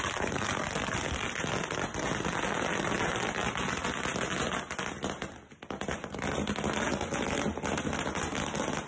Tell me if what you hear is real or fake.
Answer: real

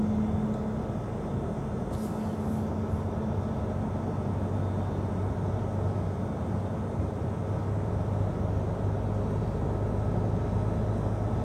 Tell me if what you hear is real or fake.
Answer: real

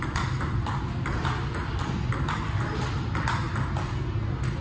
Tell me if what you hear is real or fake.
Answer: real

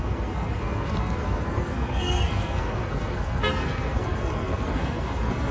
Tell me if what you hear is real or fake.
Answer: fake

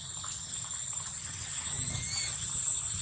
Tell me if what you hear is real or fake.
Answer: real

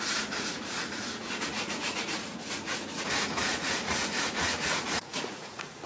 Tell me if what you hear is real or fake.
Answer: fake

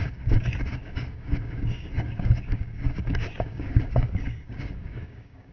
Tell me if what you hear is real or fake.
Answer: fake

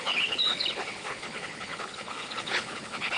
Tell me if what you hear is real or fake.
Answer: fake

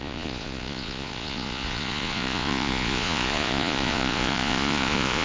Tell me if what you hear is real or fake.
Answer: fake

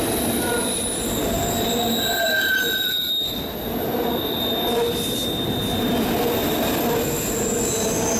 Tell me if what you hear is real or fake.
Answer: real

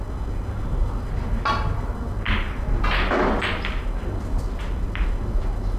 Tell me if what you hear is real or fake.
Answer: real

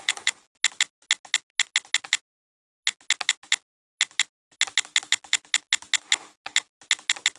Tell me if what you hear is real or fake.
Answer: real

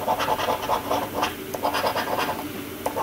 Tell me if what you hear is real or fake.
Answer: real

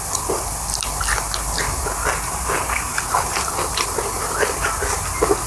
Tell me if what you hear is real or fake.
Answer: real